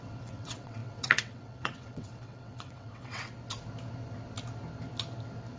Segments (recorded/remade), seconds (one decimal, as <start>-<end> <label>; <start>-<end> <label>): 0.0-3.2 remade; 3.2-5.6 recorded